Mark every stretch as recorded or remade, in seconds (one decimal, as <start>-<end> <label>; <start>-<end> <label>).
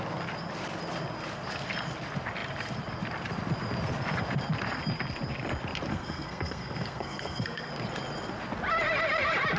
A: 0.0-5.9 recorded; 5.9-7.7 remade; 7.7-9.6 recorded